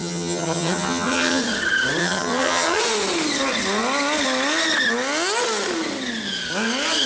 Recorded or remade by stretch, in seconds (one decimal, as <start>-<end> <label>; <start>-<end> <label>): 0.0-1.4 remade; 1.4-2.0 recorded; 2.0-2.8 remade; 2.8-7.1 recorded